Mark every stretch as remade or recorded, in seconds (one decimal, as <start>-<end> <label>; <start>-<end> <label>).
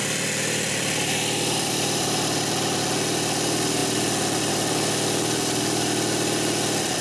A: 0.0-2.8 remade; 2.8-7.0 recorded